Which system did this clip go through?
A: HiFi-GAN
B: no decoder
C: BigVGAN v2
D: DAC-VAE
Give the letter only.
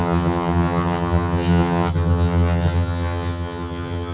A